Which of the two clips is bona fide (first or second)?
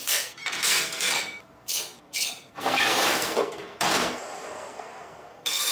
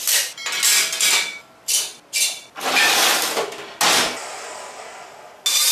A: second